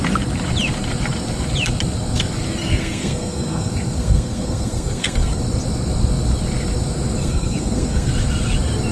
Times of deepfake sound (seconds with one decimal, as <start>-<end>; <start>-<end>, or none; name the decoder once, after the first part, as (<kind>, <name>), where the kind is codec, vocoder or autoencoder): 2.6-5.4 (codec, SNAC); 7.2-8.1